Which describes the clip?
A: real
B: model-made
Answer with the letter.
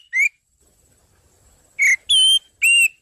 A